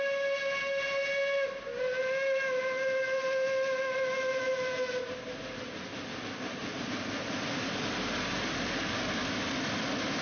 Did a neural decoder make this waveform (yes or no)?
no